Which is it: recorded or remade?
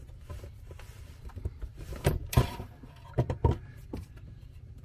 remade